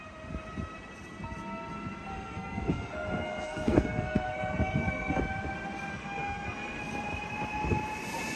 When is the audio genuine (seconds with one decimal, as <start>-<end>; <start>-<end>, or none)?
0.0-2.1; 5.2-5.9; 6.8-8.4